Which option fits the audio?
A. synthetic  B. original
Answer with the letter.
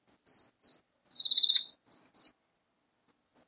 B